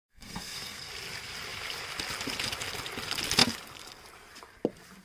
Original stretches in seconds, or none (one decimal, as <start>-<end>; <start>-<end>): 0.9-5.0